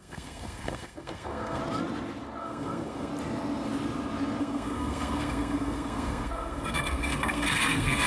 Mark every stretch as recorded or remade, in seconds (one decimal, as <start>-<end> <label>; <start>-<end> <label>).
0.0-1.6 remade; 1.6-2.4 recorded; 2.4-3.1 remade; 3.1-4.4 recorded; 4.4-8.1 remade